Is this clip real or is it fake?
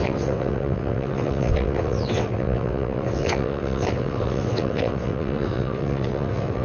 fake